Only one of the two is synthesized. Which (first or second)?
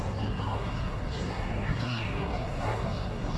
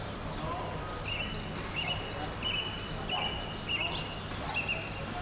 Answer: first